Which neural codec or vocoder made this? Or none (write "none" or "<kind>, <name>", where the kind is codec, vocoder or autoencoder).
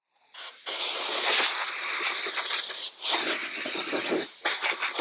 none